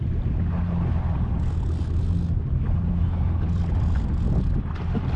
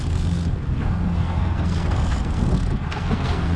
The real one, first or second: first